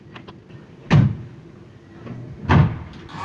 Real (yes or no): yes